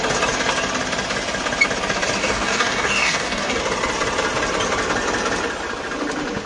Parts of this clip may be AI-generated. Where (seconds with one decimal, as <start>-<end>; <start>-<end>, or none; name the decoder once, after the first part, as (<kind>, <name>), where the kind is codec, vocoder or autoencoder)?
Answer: 2.2-3.6 (codec, DAC)